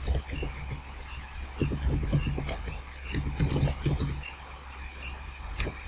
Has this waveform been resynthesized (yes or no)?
no